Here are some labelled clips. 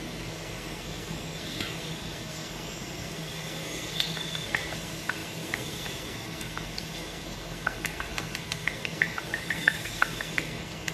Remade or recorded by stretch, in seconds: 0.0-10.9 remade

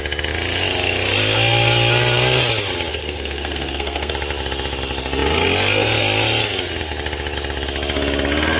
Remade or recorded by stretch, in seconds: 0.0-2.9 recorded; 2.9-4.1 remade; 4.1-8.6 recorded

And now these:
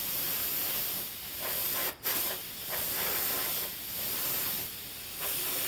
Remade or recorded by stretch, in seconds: 0.0-5.7 recorded